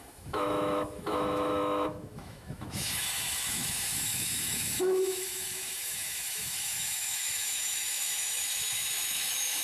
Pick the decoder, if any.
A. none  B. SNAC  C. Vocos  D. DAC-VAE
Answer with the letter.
D